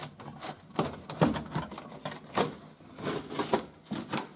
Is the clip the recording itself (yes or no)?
yes